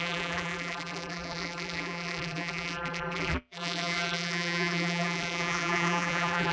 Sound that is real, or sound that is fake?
fake